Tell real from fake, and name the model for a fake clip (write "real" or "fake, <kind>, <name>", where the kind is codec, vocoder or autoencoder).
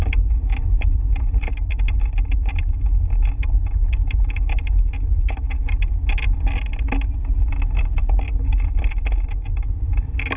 real